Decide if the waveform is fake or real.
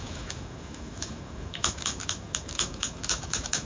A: fake